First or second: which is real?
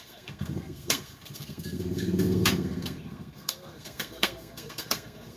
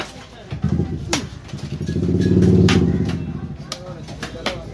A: second